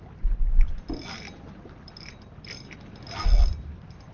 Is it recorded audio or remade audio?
recorded